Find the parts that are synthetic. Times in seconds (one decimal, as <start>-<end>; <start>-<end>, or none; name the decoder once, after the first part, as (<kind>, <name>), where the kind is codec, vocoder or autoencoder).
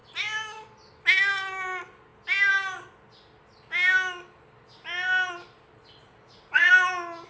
6.0-6.7 (vocoder, Vocos)